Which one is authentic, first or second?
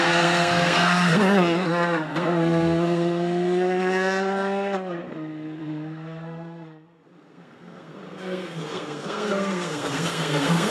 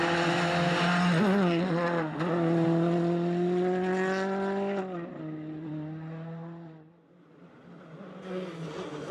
second